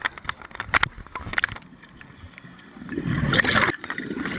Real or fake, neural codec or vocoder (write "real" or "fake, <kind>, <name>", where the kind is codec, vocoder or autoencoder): real